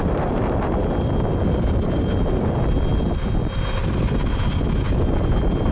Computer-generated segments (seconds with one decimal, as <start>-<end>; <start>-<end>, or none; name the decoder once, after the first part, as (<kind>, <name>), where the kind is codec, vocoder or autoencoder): none